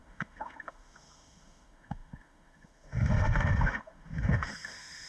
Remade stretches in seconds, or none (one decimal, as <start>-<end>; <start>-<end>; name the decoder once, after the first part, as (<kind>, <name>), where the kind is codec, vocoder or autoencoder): 0.0-5.1 (autoencoder, DAC-VAE)